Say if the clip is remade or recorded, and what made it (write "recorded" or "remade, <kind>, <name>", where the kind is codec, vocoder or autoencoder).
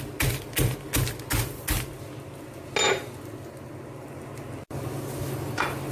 recorded